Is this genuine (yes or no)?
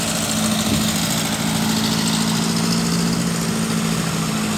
yes